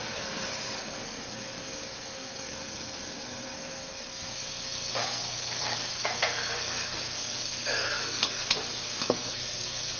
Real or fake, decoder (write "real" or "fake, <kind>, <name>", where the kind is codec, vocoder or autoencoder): fake, codec, SNAC